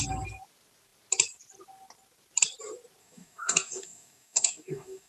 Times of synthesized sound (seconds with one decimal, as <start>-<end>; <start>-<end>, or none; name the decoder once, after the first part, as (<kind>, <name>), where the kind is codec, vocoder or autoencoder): 3.0-5.1 (codec, DAC)